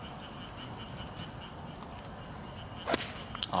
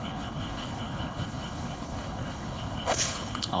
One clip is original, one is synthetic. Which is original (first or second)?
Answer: first